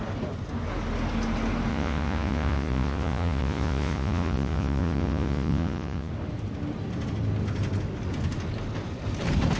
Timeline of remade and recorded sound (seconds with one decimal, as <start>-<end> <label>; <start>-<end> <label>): 0.0-1.7 recorded; 1.7-6.1 remade; 6.1-9.6 recorded